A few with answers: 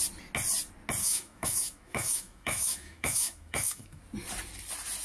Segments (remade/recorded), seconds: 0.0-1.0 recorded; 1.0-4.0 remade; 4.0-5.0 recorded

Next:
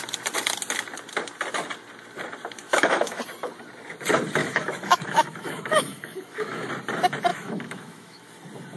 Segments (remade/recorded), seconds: 0.0-2.6 recorded; 2.6-3.2 remade; 3.2-4.4 recorded; 4.4-6.7 remade; 6.7-7.3 recorded; 7.3-8.3 remade; 8.3-8.8 recorded

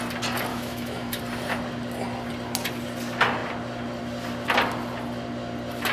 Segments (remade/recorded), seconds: 0.0-0.5 recorded; 0.5-1.2 remade; 1.2-5.9 recorded

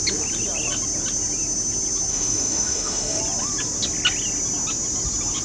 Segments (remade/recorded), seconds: 0.0-2.1 recorded; 2.1-3.2 remade; 3.2-5.4 recorded

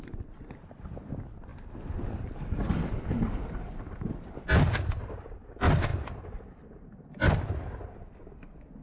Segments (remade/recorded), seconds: 0.0-8.8 recorded

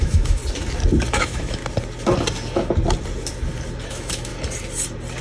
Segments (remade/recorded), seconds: 0.0-0.4 remade; 0.4-1.1 recorded; 1.1-1.6 remade; 1.6-3.9 recorded; 3.9-4.3 remade; 4.3-5.2 recorded

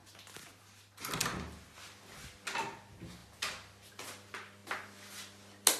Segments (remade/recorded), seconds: 0.0-5.8 recorded

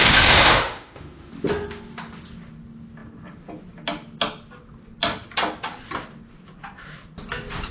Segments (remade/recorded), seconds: 0.0-1.3 remade; 1.3-7.7 recorded